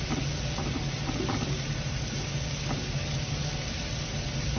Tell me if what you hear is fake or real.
real